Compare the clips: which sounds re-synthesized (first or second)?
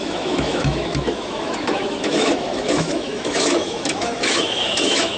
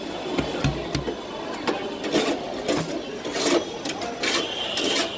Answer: first